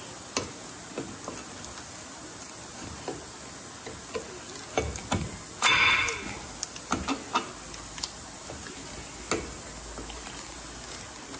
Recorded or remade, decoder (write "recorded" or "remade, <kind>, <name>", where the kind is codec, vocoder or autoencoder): recorded